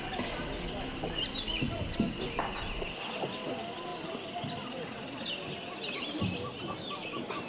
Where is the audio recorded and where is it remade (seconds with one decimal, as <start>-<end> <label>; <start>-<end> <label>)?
0.0-7.5 recorded